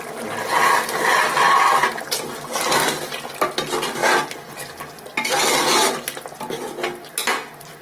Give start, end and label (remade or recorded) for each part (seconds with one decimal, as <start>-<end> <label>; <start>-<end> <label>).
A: 0.0-7.8 recorded